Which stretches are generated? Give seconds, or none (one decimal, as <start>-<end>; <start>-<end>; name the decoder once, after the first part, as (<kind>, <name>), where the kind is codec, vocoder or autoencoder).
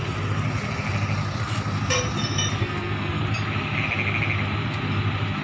2.6-3.2 (codec, SNAC)